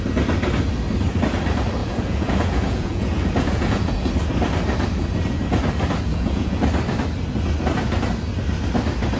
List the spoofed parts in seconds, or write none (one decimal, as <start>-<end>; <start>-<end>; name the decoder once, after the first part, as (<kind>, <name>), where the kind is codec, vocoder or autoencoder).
1.8-4.1 (vocoder, Vocos); 6.1-6.6